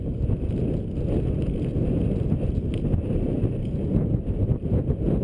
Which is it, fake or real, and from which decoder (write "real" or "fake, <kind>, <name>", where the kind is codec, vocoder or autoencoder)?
real